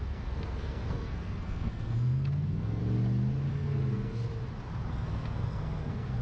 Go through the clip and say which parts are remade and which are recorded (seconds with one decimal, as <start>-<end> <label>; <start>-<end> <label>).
0.0-2.8 remade; 2.8-3.5 recorded; 3.5-4.3 remade; 4.3-4.9 recorded; 4.9-6.2 remade